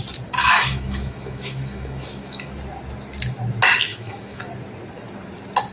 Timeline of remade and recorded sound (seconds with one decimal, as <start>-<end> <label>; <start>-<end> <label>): 0.0-0.4 recorded; 0.4-2.5 remade; 2.5-3.9 recorded; 3.9-4.5 remade; 4.5-5.7 recorded